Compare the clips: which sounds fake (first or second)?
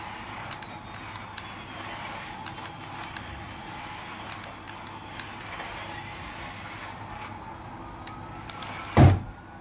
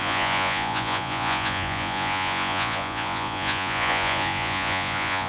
second